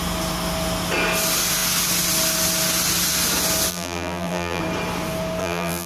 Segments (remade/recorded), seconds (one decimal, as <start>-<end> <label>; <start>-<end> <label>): 0.0-3.7 recorded; 3.7-4.6 remade; 4.6-5.4 recorded; 5.4-5.9 remade